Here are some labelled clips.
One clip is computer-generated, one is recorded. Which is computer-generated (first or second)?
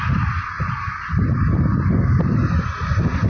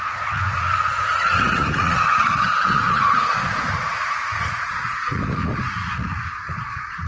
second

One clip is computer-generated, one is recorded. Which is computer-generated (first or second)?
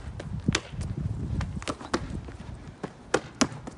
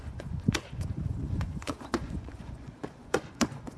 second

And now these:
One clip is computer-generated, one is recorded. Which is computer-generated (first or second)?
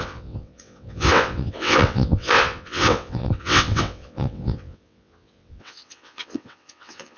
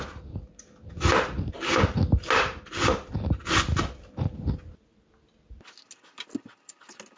first